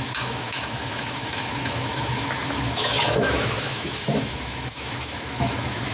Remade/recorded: remade